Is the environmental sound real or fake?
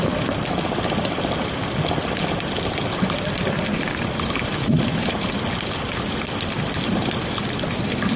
fake